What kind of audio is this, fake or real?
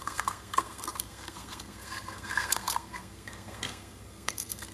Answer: fake